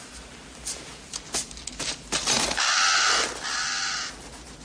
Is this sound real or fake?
real